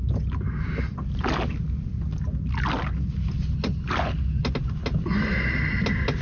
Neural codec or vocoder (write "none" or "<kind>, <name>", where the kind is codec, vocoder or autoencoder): none